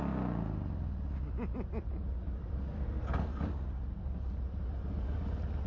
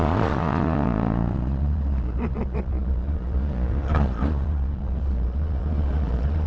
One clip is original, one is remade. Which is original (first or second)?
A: first